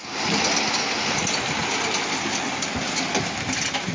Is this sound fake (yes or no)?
no